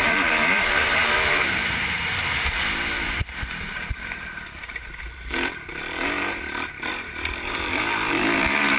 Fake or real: fake